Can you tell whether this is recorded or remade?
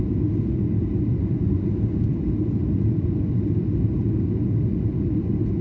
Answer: recorded